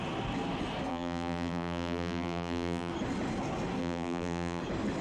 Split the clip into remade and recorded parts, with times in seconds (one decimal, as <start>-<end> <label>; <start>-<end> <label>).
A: 0.0-0.9 recorded; 0.9-2.9 remade; 2.9-3.8 recorded; 3.8-4.6 remade; 4.6-5.0 recorded

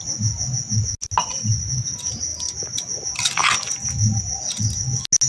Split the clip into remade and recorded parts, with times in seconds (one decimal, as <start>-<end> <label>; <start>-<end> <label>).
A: 0.0-5.3 recorded

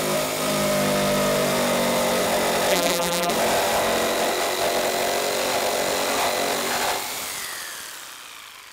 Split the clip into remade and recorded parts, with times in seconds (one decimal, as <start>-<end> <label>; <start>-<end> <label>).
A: 0.0-2.7 recorded; 2.7-3.3 remade; 3.3-8.7 recorded